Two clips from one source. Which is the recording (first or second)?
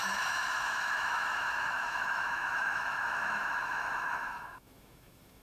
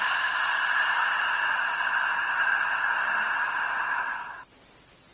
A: second